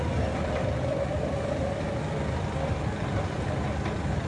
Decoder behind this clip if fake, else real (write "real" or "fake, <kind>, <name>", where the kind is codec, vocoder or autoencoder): real